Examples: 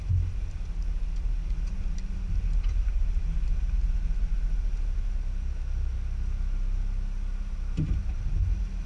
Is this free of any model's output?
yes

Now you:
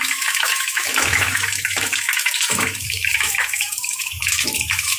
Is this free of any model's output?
no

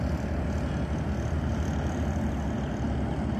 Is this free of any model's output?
yes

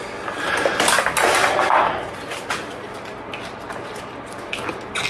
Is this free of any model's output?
yes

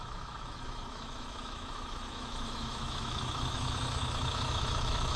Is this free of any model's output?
no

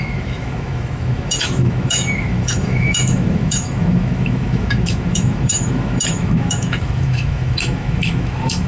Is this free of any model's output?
no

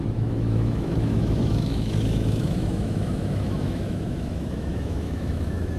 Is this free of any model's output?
no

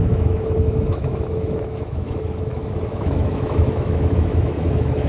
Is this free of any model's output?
no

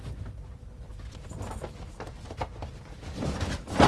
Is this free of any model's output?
yes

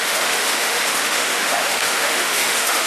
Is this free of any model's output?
no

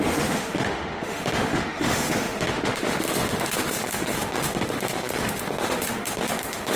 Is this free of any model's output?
no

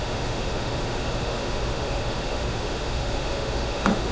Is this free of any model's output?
no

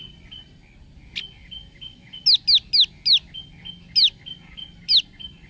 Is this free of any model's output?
yes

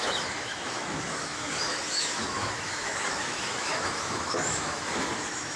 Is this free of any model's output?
no